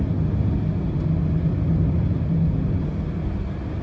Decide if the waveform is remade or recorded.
recorded